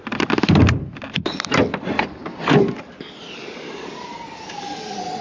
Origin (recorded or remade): remade